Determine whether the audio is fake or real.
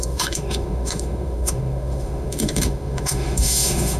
fake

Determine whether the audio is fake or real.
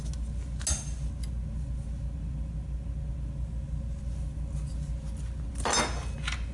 real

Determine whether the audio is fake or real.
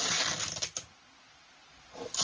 real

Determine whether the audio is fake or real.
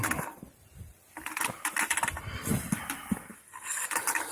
fake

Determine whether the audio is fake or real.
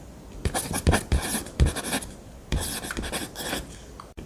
real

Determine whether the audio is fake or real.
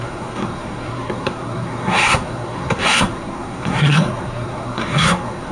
fake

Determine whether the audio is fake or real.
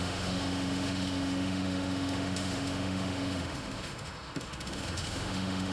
fake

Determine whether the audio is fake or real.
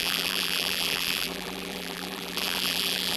fake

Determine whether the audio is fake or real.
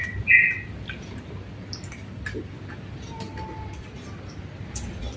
real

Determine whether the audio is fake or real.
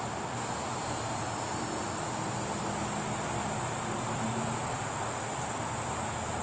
real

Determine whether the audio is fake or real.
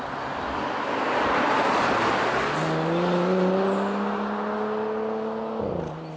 real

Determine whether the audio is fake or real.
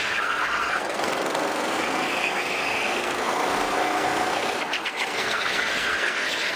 fake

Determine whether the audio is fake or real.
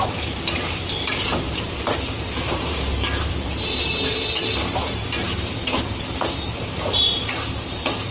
fake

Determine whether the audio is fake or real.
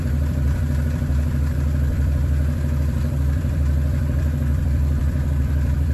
fake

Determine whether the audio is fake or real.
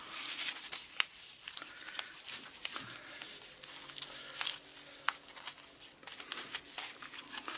real